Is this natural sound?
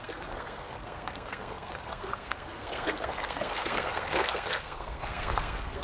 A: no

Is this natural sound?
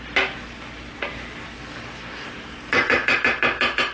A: yes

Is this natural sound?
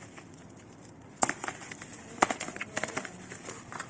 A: yes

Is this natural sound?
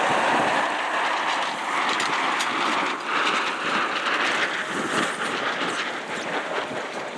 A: yes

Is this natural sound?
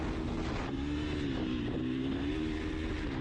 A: yes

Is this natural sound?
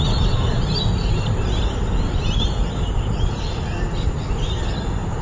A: yes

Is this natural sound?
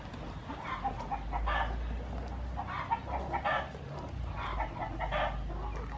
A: yes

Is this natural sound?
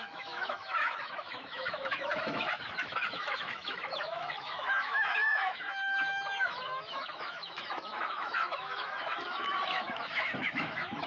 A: no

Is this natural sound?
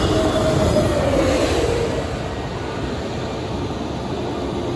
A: yes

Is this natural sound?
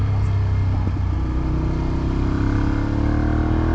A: yes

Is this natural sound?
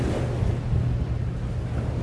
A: yes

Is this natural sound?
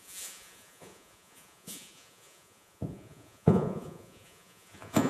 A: no